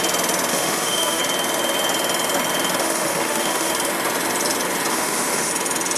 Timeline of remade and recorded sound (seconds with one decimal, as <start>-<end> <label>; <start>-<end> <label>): 0.0-0.5 recorded; 0.5-1.2 remade; 1.2-2.8 recorded; 2.8-3.7 remade; 3.7-4.9 recorded; 4.9-5.5 remade; 5.5-6.0 recorded